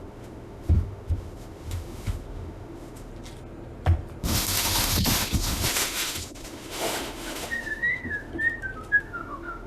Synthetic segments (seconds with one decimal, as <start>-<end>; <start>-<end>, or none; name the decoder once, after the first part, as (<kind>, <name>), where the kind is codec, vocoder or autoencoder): 0.0-3.1 (autoencoder, DAC-VAE); 4.2-8.3; 9.0-9.7